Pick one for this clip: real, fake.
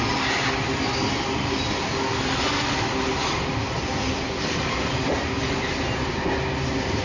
real